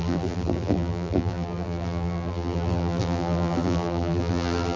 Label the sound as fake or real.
fake